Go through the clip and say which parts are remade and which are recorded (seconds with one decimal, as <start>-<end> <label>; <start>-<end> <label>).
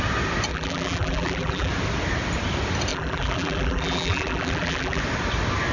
0.0-0.5 recorded; 0.5-1.7 remade; 1.7-2.9 recorded; 2.9-5.0 remade; 5.0-5.7 recorded